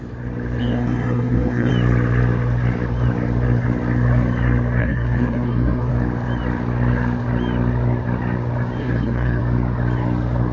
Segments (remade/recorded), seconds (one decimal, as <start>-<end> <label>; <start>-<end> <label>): 0.0-0.6 recorded; 0.6-1.7 remade; 1.7-4.8 recorded; 4.8-5.9 remade; 5.9-8.8 recorded; 8.8-9.4 remade; 9.4-10.5 recorded